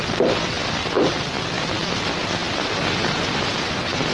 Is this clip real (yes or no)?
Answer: yes